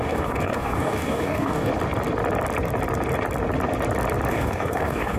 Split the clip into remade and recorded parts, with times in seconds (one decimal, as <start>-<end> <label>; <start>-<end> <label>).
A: 0.0-1.7 remade; 1.7-4.3 recorded; 4.3-5.2 remade